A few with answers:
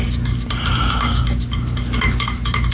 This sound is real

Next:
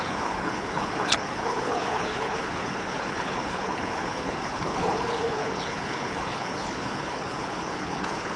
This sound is fake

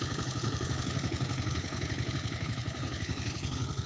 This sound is fake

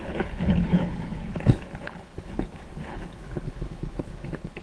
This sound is fake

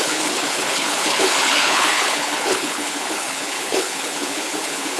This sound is fake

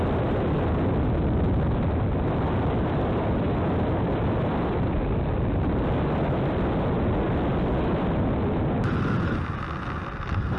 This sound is real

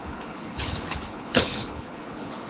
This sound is fake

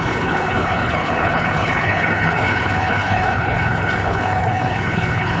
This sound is fake